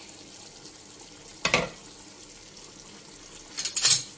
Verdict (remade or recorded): recorded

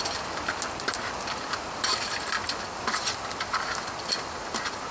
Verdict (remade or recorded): recorded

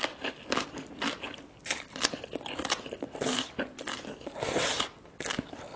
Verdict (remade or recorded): recorded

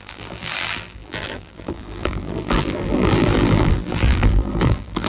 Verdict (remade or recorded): remade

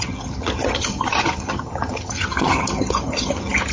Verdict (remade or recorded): remade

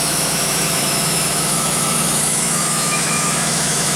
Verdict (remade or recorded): remade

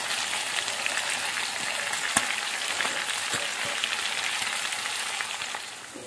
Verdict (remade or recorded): recorded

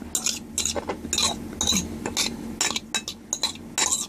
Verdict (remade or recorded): recorded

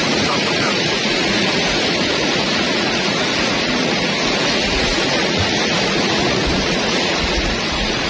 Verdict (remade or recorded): remade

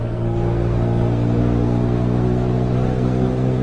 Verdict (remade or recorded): remade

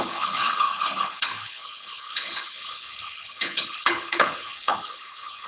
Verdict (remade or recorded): remade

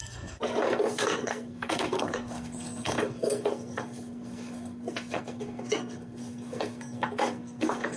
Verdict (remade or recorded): remade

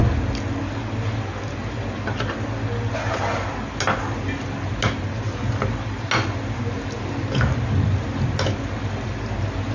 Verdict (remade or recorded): recorded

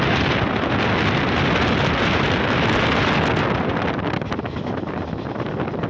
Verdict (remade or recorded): recorded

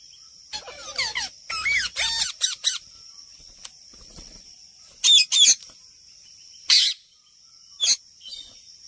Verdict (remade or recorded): recorded